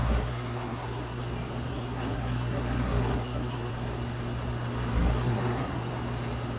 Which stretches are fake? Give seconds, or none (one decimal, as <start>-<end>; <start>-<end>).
0.0-1.2; 1.7-3.7; 4.9-5.9

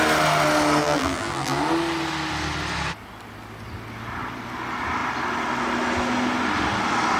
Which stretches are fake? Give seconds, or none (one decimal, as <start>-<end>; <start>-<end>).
0.8-1.6

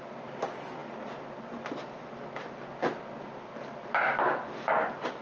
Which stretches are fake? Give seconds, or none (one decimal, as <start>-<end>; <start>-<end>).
none

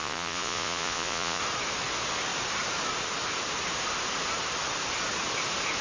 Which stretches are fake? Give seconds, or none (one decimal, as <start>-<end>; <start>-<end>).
0.0-1.4

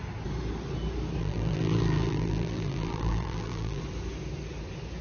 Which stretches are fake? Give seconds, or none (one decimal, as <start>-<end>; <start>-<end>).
1.2-3.8

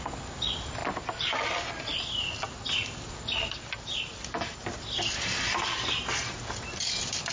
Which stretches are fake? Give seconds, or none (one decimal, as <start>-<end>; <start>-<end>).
none

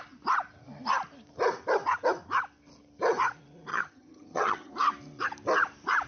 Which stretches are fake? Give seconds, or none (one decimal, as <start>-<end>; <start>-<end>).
3.7-4.7